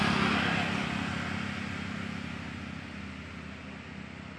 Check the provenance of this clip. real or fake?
real